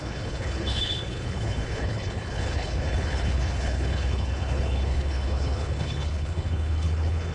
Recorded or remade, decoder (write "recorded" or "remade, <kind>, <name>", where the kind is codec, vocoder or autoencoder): remade, codec, HILCodec